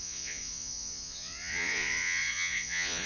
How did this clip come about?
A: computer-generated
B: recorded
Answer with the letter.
A